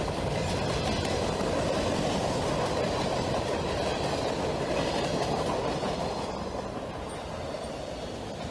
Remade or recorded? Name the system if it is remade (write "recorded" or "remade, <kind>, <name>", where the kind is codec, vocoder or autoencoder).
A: recorded